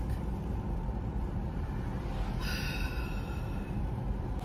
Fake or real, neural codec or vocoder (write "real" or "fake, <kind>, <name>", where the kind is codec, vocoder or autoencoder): real